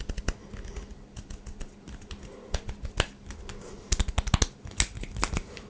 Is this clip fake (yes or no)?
no